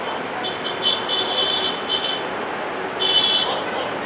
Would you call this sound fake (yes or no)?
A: no